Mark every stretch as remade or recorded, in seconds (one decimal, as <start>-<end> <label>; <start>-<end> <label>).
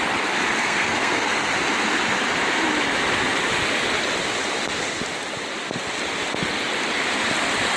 0.0-0.6 recorded; 0.6-1.5 remade; 1.5-7.8 recorded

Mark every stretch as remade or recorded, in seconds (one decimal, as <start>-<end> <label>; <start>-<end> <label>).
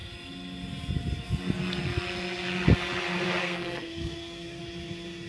0.0-3.4 recorded; 3.4-4.6 remade; 4.6-5.3 recorded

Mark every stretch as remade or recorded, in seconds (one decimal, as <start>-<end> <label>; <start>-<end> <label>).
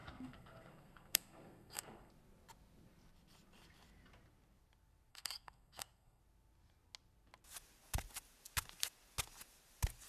0.0-2.1 remade; 2.1-5.1 recorded; 5.1-6.2 remade; 6.2-10.1 recorded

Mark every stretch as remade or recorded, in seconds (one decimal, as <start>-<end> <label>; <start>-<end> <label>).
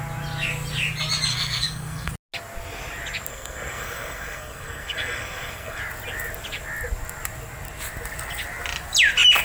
0.0-1.3 recorded; 1.3-2.1 remade; 2.1-3.3 recorded; 3.3-5.8 remade; 5.8-9.4 recorded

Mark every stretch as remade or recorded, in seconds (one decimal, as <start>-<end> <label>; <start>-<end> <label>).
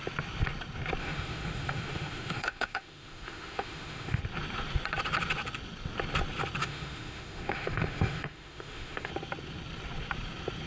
0.0-1.0 recorded; 1.0-4.2 remade; 4.2-6.6 recorded; 6.6-9.1 remade; 9.1-10.7 recorded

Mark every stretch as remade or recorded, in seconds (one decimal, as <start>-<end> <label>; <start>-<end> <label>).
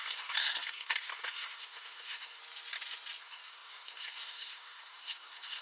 0.0-2.4 remade; 2.4-3.2 recorded; 3.2-5.6 remade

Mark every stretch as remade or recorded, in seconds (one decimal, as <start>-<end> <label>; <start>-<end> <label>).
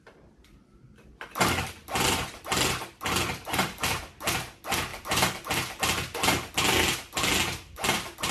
0.0-1.8 recorded; 1.8-4.0 remade; 4.0-4.9 recorded; 4.9-5.8 remade; 5.8-8.3 recorded